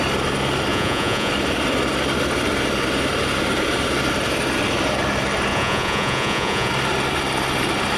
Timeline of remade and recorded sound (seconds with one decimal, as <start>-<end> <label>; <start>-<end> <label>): 0.0-0.7 recorded; 0.7-1.3 remade; 1.3-5.5 recorded; 5.5-6.7 remade; 6.7-8.0 recorded

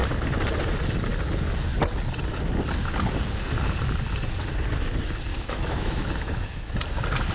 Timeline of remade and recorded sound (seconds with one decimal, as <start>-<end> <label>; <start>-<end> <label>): 0.0-5.3 recorded; 5.3-6.7 remade; 6.7-7.3 recorded

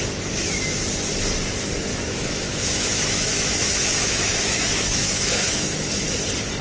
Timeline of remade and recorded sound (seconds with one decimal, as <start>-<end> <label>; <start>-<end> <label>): 0.0-1.9 recorded; 1.9-5.9 remade; 5.9-6.6 recorded

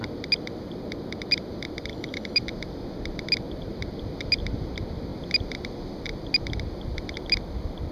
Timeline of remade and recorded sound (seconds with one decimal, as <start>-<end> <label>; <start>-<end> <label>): 0.0-1.9 recorded; 1.9-2.4 remade; 2.4-7.9 recorded